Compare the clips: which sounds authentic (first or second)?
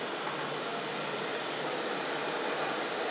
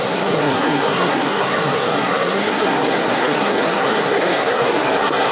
first